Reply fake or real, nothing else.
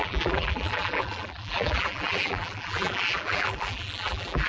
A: fake